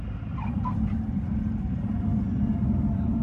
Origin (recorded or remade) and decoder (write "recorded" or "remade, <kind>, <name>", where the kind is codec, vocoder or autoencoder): recorded